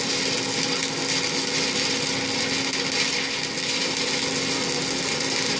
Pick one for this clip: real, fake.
real